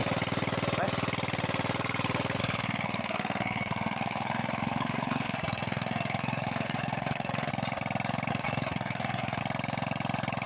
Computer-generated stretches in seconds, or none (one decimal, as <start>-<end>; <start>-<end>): 2.4-7.5; 8.3-9.4